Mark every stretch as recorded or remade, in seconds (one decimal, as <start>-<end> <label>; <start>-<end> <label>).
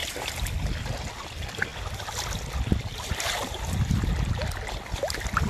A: 0.0-5.5 recorded